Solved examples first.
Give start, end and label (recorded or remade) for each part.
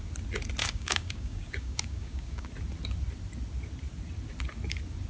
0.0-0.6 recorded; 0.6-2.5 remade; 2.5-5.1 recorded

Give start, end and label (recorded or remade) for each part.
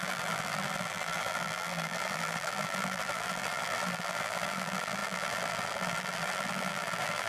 0.0-7.3 remade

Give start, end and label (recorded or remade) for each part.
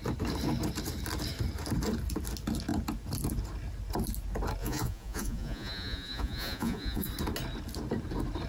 0.0-4.6 recorded; 4.6-7.1 remade; 7.1-8.5 recorded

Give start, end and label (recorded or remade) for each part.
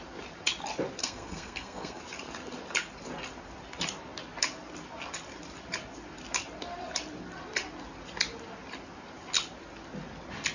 0.0-1.0 recorded; 1.0-2.0 remade; 2.0-10.5 recorded